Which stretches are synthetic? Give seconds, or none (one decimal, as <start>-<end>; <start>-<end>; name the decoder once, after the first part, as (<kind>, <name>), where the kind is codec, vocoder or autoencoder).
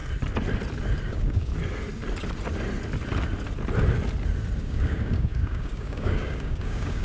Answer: 1.1-1.5 (codec, DAC); 4.6-7.0